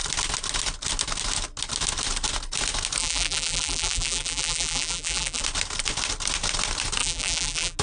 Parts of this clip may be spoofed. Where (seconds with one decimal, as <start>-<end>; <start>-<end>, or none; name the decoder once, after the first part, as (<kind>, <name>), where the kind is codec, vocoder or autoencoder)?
3.0-5.4 (vocoder, BigVGAN v2); 7.0-7.8